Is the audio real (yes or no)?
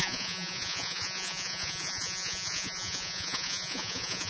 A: no